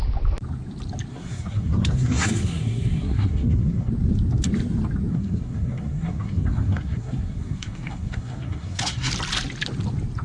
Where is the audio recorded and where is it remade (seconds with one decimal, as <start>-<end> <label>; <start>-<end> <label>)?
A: 0.0-1.1 recorded; 1.1-3.9 remade; 3.9-5.1 recorded; 5.1-9.1 remade; 9.1-10.2 recorded